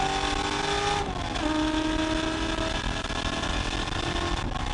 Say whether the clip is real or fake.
real